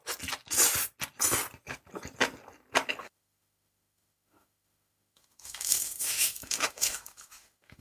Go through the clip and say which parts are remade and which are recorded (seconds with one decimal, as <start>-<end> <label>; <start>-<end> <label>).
0.0-3.0 recorded; 3.0-7.8 remade